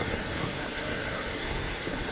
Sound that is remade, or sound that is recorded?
remade